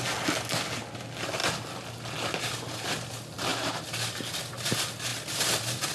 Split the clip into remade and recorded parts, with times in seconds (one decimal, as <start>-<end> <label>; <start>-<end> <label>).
0.0-5.9 recorded